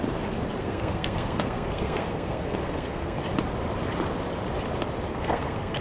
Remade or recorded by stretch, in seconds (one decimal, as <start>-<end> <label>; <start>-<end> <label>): 0.0-0.6 recorded; 0.6-3.2 remade; 3.2-5.1 recorded; 5.1-5.8 remade